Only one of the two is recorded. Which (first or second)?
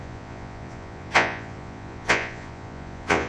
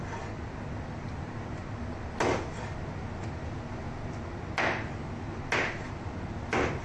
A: second